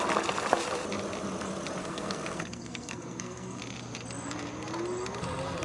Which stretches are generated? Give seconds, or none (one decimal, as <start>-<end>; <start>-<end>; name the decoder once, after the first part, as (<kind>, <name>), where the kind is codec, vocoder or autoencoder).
1.8-3.6 (codec, SNAC)